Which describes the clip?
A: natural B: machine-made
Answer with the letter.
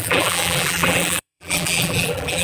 B